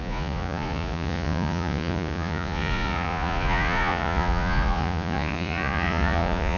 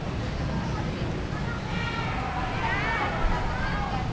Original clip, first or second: second